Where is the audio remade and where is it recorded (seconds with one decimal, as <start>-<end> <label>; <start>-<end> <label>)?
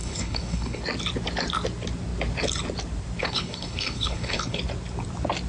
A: 0.0-0.8 remade; 0.8-3.2 recorded; 3.2-4.6 remade; 4.6-5.5 recorded